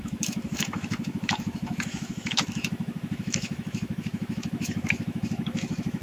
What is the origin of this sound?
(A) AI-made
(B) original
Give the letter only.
A